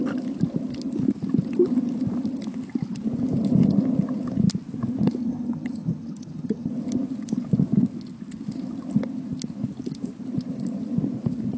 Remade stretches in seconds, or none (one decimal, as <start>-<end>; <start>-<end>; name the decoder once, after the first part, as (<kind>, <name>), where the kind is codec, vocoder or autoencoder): 5.2-6.7 (vocoder, HiFi-GAN)